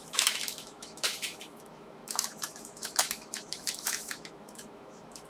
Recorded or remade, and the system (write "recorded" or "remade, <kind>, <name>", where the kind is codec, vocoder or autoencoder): remade, autoencoder, DAC-VAE